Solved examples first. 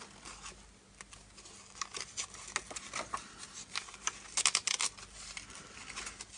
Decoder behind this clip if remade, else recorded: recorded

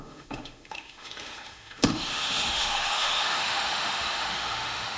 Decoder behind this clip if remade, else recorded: remade, autoencoder, DAC-VAE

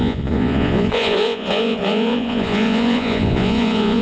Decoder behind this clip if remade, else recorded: remade, vocoder, Vocos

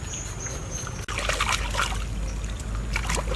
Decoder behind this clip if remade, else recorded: recorded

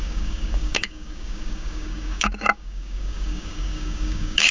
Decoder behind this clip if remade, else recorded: remade, codec, DAC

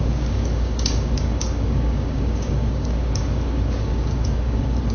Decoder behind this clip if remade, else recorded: remade, codec, DAC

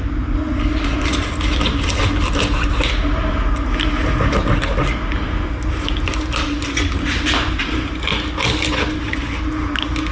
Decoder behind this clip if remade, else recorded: recorded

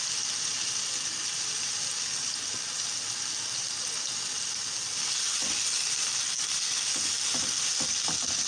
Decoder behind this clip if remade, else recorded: recorded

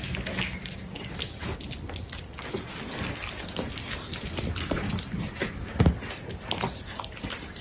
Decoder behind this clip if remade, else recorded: recorded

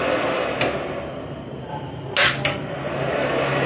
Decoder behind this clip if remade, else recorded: recorded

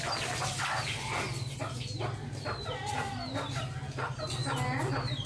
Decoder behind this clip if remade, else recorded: recorded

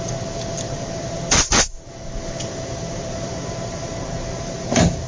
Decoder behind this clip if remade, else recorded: remade, vocoder, BigVGAN v2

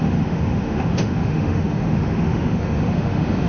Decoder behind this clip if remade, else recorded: remade, autoencoder, DAC-VAE